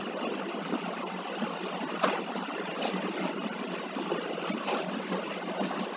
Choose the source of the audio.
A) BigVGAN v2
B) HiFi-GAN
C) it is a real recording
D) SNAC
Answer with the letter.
A